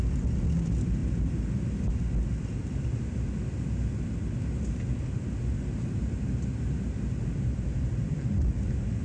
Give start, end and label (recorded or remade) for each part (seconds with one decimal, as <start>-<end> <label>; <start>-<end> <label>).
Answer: 0.0-9.0 recorded